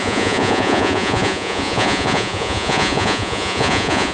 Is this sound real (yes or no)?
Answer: no